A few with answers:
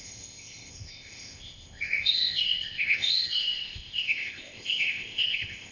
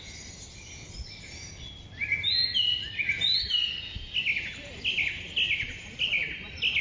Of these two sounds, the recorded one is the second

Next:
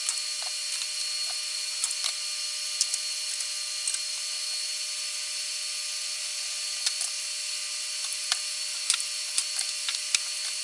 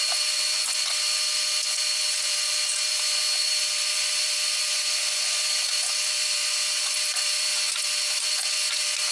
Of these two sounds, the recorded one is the first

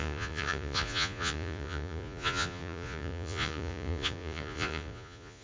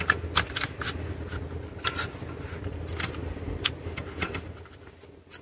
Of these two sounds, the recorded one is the second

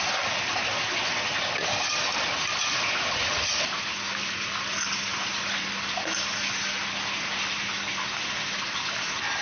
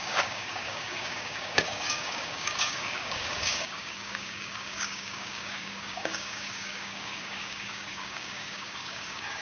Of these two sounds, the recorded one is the first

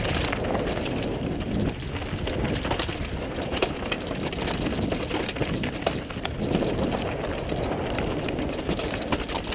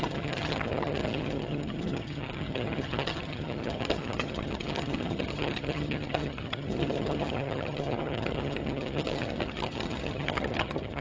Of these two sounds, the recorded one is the first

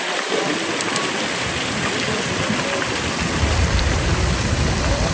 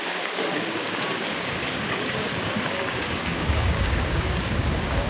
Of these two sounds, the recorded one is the first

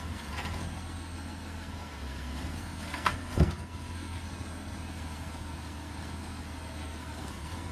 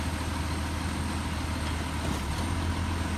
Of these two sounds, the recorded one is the second